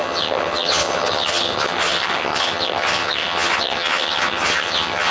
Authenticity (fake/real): fake